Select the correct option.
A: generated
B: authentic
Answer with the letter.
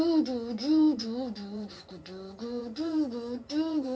A